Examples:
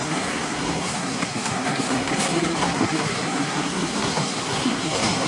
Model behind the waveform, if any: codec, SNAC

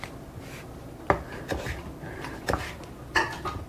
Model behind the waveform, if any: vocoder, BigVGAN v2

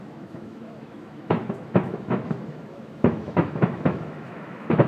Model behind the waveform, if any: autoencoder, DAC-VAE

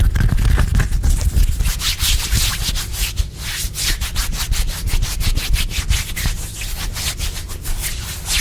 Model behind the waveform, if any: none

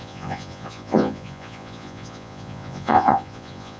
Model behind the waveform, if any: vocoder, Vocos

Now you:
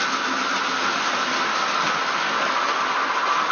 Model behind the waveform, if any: none